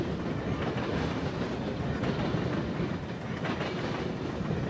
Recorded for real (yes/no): yes